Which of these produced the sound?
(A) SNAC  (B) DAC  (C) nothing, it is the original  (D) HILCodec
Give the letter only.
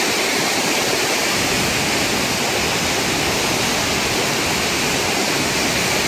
C